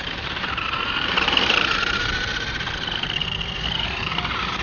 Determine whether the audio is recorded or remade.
remade